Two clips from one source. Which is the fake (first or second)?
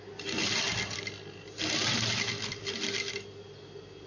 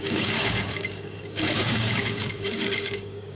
second